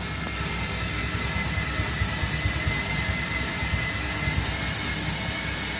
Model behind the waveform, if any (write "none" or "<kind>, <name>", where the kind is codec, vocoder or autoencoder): none